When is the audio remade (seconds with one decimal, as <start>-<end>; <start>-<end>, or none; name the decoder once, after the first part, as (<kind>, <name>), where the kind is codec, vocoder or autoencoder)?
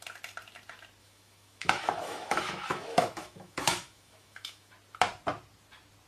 1.0-4.7 (autoencoder, DAC-VAE)